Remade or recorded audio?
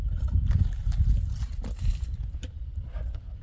recorded